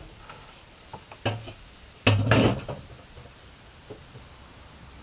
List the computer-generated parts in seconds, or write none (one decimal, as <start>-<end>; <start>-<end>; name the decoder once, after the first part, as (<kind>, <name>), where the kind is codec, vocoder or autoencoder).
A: none